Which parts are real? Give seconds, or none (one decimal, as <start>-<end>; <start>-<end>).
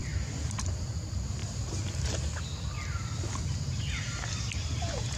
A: none